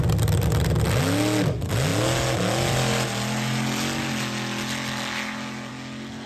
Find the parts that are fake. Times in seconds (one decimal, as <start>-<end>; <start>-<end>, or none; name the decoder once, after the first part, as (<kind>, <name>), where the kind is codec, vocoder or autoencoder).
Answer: none